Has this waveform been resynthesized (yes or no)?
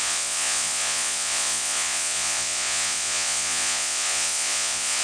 yes